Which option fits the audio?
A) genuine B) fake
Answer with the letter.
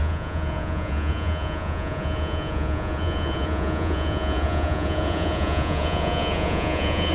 B